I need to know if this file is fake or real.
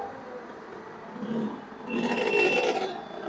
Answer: real